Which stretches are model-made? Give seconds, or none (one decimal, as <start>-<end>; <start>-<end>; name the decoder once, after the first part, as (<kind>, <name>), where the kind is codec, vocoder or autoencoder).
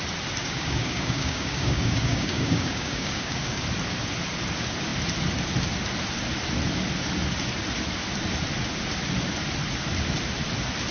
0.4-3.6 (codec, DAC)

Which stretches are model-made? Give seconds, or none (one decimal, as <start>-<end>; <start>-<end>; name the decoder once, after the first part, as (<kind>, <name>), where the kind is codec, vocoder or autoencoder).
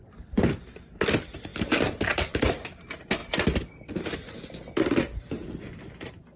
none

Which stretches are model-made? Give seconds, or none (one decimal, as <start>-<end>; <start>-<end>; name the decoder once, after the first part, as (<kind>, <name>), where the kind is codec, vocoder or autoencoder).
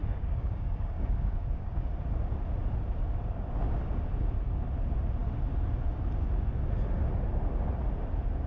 0.0-1.9 (codec, DAC)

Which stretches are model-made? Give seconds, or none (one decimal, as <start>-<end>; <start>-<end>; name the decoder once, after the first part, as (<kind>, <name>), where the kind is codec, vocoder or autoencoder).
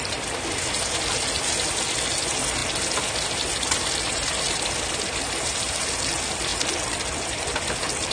none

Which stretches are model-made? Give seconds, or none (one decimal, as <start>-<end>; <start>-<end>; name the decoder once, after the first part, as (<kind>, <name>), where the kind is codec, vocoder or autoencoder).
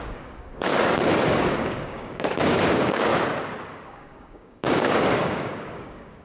0.0-0.7 (codec, DAC); 1.3-3.1; 3.8-6.2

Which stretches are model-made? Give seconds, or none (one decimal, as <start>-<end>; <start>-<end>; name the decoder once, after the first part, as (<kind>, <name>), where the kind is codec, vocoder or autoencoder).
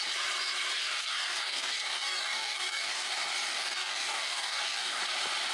0.8-3.1 (codec, DAC); 3.5-5.0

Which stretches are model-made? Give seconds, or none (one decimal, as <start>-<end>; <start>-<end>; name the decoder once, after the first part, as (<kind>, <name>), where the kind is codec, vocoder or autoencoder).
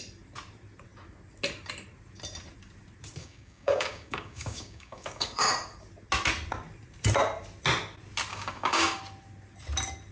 3.2-5.5 (codec, DAC); 8.3-9.0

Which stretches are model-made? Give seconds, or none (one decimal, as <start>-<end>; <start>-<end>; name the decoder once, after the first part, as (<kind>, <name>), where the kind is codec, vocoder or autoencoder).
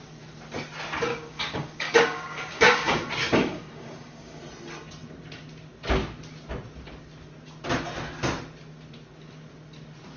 1.1-3.0 (codec, DAC); 3.4-4.4